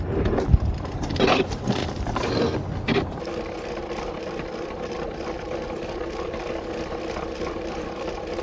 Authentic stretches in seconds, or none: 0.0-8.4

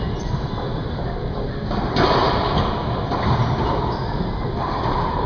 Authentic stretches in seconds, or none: 0.0-5.3